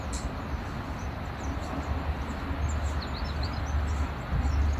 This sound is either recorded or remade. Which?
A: recorded